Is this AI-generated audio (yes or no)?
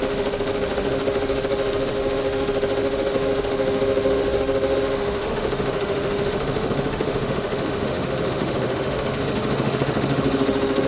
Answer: yes